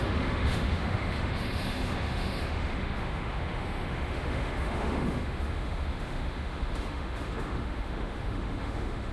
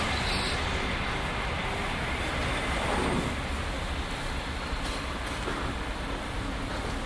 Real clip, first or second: second